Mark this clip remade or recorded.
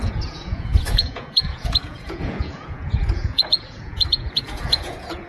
remade